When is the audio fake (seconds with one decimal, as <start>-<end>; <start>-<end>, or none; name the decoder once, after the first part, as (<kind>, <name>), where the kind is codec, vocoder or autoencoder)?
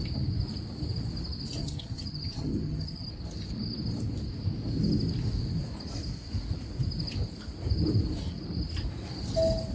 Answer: 1.6-3.1 (vocoder, HiFi-GAN)